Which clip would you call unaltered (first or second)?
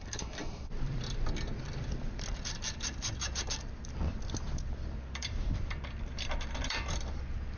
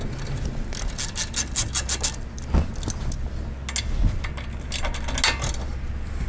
second